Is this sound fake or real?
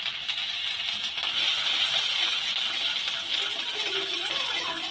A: real